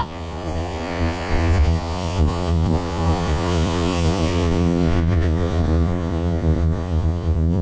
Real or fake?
fake